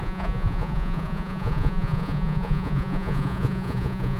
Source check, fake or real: fake